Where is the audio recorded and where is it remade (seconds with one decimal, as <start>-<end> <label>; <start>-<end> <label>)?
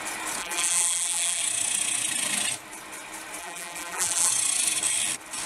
0.0-0.4 recorded; 0.4-1.4 remade; 1.4-3.4 recorded; 3.4-4.3 remade; 4.3-5.5 recorded